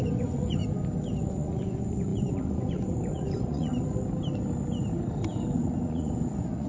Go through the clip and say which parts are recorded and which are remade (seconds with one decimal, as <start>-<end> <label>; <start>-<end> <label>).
0.0-0.6 remade; 0.6-1.3 recorded; 1.3-3.7 remade; 3.7-5.6 recorded; 5.6-6.7 remade